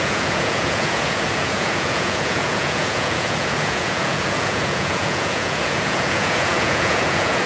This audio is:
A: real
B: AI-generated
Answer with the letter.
B